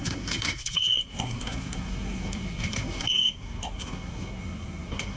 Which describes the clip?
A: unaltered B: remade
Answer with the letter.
B